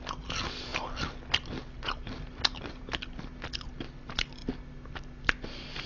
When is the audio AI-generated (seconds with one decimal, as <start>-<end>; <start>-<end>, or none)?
none